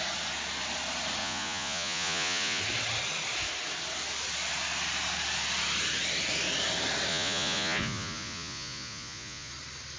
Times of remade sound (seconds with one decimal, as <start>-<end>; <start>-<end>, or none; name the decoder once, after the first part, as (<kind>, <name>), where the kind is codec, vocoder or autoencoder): 1.2-2.6 (vocoder, Vocos); 7.1-9.5